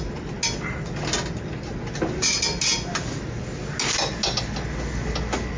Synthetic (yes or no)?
no